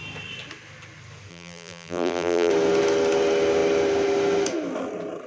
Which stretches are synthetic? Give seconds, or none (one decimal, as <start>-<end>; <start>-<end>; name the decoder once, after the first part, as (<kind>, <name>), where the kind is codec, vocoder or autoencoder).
1.3-2.5 (vocoder, BigVGAN v2)